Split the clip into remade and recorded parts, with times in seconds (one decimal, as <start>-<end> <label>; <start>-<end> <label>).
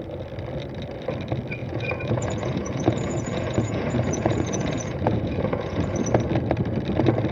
0.0-1.6 recorded; 1.6-6.0 remade; 6.0-7.3 recorded